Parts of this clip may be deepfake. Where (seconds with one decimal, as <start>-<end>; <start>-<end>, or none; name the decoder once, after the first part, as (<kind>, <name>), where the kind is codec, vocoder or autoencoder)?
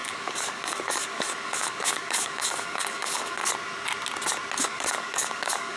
0.0-3.4 (codec, DAC); 4.6-5.8